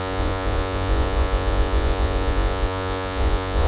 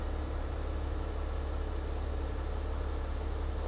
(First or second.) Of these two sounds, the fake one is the first